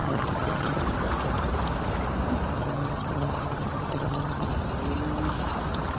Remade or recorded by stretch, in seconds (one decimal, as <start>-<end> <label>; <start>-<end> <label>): 0.0-0.8 remade; 0.8-2.6 recorded; 2.6-4.5 remade; 4.5-6.0 recorded